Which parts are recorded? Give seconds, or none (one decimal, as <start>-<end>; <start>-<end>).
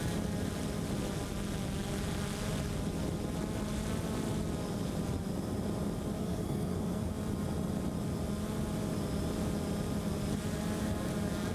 0.0-6.2; 7.1-11.5